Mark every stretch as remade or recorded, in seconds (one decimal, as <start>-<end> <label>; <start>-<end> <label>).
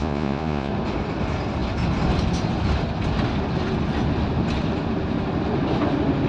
0.0-0.7 remade; 0.7-6.3 recorded